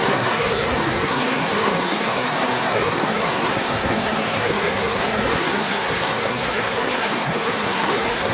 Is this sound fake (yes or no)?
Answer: yes